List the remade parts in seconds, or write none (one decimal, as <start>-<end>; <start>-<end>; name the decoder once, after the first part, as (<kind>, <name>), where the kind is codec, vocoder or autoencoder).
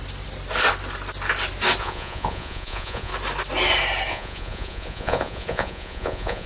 1.8-3.1 (vocoder, Vocos); 4.1-6.5